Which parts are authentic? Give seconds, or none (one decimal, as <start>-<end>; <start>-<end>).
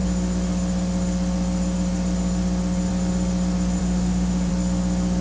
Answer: 0.0-3.8; 4.5-5.2